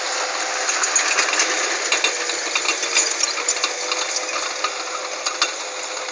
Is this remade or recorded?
recorded